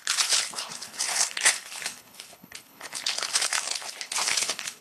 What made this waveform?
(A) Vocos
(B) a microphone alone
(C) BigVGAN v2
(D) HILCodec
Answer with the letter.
D